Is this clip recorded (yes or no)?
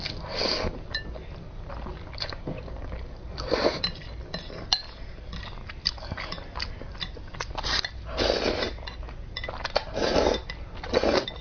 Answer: yes